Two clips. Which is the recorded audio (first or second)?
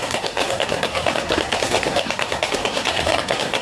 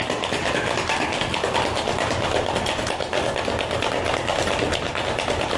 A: second